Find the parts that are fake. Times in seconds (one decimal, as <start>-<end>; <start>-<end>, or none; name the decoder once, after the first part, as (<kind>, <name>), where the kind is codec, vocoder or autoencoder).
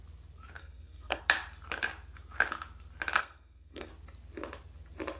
0.6-1.2 (codec, SNAC); 3.2-3.9